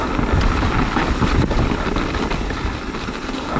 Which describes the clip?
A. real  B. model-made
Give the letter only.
A